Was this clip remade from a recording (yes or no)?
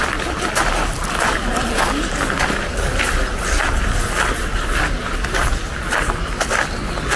no